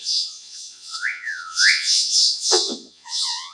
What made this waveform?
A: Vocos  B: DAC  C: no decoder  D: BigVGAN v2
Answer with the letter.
A